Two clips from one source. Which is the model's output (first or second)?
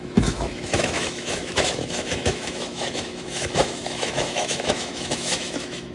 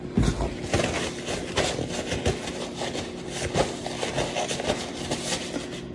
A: first